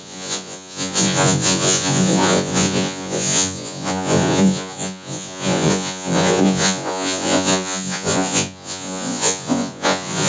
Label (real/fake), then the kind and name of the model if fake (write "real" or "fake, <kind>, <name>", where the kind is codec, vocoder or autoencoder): fake, vocoder, Vocos